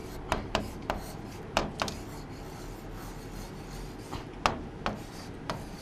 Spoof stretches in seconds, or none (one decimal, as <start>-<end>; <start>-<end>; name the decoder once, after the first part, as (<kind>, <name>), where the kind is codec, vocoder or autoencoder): 0.0-1.6 (vocoder, BigVGAN v2); 5.1-5.8